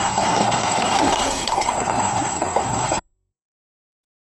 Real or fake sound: fake